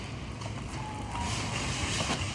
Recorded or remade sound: recorded